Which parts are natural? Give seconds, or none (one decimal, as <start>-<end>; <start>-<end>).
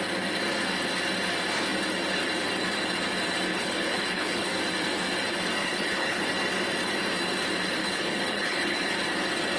0.0-3.5; 4.5-5.6; 6.2-7.8; 8.9-9.6